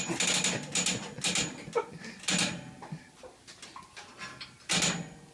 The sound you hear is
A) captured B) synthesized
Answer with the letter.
A